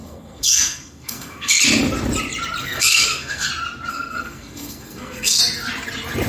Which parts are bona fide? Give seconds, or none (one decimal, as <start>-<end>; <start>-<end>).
1.6-2.6; 3.5-3.9; 5.4-6.3